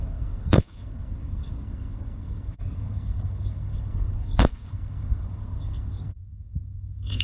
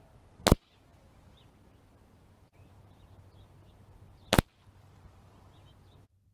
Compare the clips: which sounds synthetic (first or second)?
first